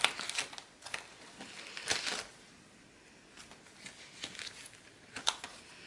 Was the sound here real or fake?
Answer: real